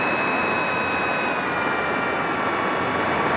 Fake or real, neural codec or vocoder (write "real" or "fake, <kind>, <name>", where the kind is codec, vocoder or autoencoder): real